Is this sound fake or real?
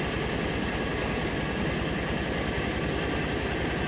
real